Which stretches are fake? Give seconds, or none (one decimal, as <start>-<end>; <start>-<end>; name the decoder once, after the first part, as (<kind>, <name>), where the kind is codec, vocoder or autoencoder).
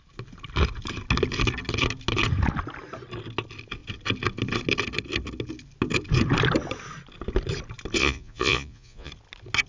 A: 8.0-9.1 (vocoder, Vocos)